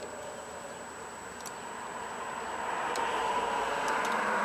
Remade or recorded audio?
recorded